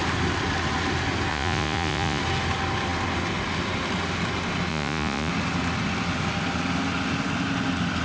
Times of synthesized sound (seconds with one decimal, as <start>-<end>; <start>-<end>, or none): 1.3-2.2; 4.7-5.3